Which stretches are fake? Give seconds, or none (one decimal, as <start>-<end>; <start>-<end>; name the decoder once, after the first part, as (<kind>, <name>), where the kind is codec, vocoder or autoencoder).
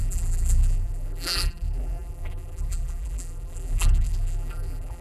0.0-5.0 (vocoder, BigVGAN v2)